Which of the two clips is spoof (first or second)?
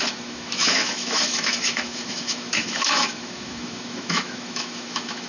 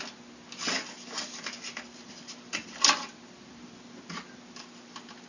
first